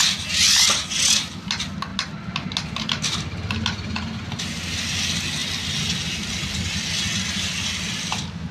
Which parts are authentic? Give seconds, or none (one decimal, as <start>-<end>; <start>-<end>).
0.0-8.5